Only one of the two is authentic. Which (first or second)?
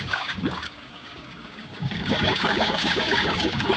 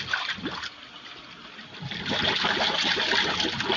second